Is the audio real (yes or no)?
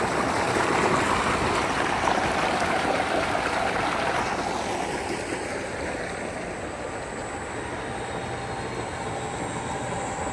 yes